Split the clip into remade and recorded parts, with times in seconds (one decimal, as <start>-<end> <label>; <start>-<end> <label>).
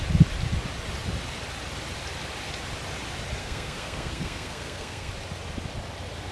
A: 0.0-3.4 recorded; 3.4-5.1 remade; 5.1-6.3 recorded